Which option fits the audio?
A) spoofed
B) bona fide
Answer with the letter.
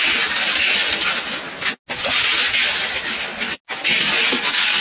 B